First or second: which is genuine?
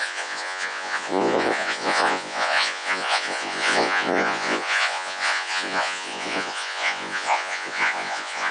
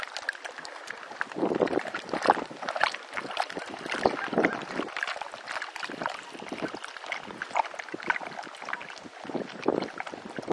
second